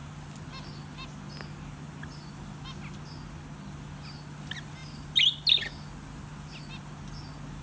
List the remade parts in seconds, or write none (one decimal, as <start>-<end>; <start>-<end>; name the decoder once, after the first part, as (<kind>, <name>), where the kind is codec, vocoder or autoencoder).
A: none